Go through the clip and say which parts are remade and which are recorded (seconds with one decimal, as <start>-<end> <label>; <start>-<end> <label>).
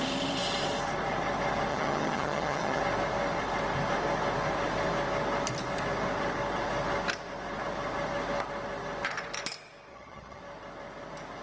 0.0-1.7 recorded; 1.7-2.8 remade; 2.8-9.9 recorded; 9.9-10.4 remade; 10.4-11.4 recorded